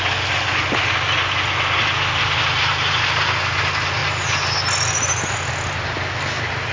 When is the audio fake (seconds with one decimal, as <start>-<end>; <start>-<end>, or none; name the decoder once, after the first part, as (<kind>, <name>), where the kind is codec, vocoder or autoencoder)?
none